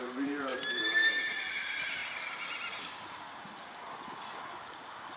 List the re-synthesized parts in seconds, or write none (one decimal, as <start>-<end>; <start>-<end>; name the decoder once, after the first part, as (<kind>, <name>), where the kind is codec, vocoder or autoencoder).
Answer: 0.0-2.0 (vocoder, BigVGAN v2)